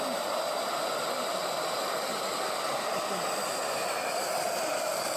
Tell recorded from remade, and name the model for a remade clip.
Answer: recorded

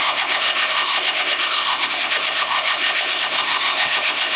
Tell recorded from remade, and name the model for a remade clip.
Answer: remade, codec, ZipCodec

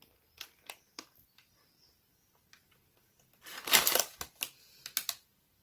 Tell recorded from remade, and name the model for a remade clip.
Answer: recorded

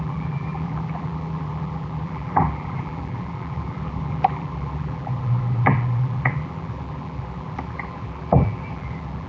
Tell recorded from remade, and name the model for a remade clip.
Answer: remade, vocoder, BigVGAN v2